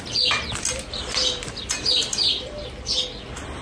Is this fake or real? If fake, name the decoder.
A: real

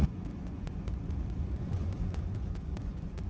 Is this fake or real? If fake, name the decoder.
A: fake, vocoder, Vocos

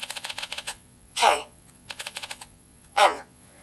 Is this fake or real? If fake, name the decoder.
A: fake, vocoder, Vocos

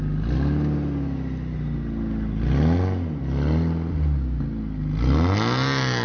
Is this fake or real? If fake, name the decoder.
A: real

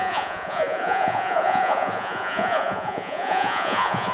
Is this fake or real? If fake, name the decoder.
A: fake, vocoder, Vocos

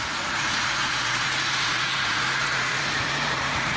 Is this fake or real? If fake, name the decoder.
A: fake, vocoder, Vocos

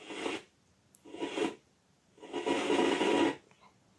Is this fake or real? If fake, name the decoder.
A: real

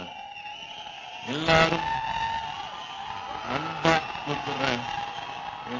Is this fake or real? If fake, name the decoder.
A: real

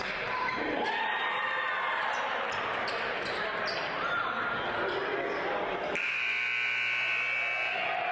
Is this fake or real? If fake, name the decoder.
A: real